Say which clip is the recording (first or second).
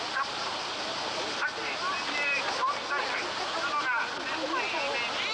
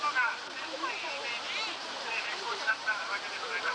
first